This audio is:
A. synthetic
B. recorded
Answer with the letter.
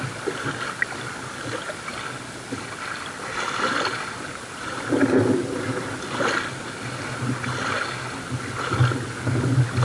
B